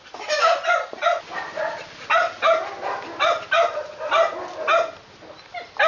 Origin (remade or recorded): recorded